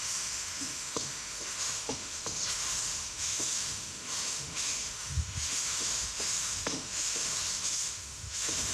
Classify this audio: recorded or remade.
remade